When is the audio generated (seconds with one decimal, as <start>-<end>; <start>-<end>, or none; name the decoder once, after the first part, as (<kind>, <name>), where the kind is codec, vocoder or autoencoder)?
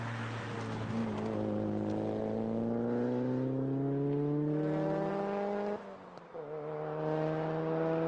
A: none